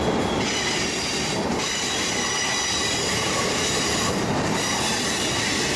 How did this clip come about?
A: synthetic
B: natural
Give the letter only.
B